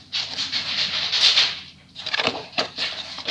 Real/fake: fake